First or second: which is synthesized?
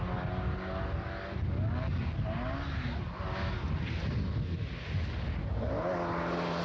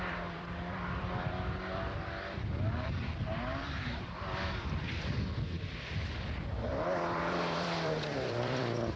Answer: second